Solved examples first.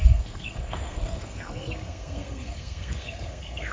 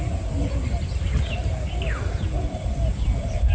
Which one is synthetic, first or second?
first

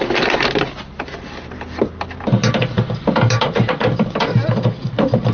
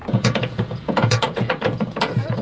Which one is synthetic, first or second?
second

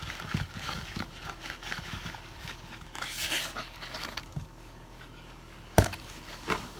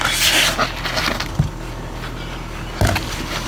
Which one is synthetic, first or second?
first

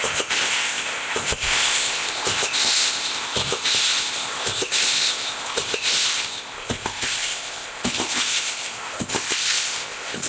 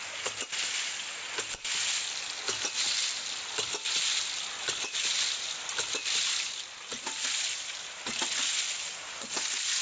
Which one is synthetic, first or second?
first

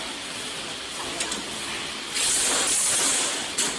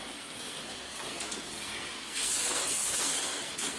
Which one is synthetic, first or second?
second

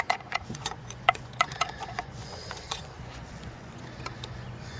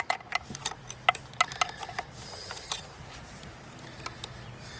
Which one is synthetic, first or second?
first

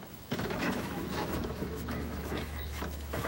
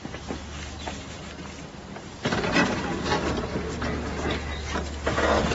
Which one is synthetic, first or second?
first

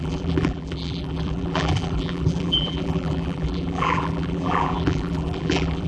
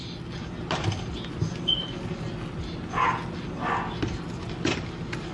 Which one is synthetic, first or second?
first